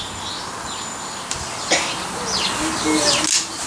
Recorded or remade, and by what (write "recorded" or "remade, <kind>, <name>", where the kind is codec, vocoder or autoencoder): recorded